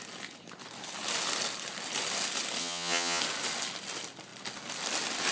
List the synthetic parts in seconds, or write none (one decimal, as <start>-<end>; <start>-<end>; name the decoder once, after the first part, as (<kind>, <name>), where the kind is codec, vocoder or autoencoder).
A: 2.6-3.2 (vocoder, HiFi-GAN)